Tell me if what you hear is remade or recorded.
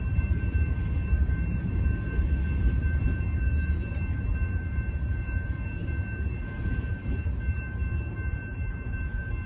remade